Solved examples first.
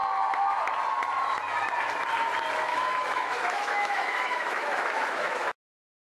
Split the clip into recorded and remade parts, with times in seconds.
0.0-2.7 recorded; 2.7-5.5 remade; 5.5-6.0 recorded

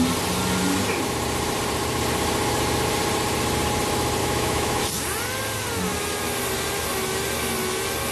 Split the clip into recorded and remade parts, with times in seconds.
0.0-4.2 recorded; 4.2-4.8 remade; 4.8-8.1 recorded

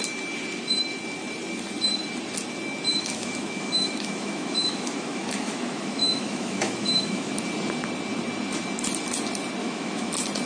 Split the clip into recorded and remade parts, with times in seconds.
0.0-2.9 recorded; 2.9-7.3 remade; 7.3-9.6 recorded; 9.6-10.1 remade; 10.1-10.5 recorded

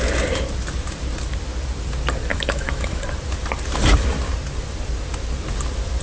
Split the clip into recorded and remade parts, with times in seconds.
0.0-2.3 recorded; 2.3-3.0 remade; 3.0-6.0 recorded

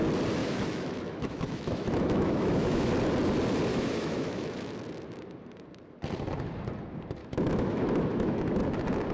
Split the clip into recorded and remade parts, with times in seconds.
0.0-0.4 recorded; 0.4-2.9 remade; 2.9-3.7 recorded; 3.7-4.7 remade; 4.7-7.2 recorded; 7.2-8.4 remade; 8.4-9.1 recorded

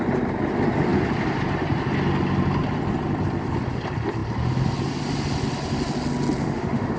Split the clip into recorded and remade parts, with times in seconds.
0.0-6.4 recorded; 6.4-7.0 remade

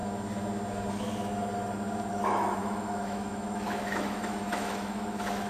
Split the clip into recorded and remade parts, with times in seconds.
0.0-0.9 recorded; 0.9-1.3 remade; 1.3-2.1 recorded; 2.1-5.5 remade